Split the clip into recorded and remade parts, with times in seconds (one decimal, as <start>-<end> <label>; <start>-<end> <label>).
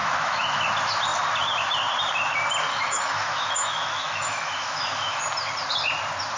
0.0-0.6 remade; 0.6-2.7 recorded; 2.7-5.2 remade; 5.2-6.4 recorded